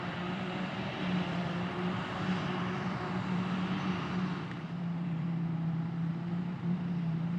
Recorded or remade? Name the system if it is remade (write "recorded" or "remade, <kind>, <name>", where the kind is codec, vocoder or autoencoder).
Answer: remade, vocoder, BigVGAN v2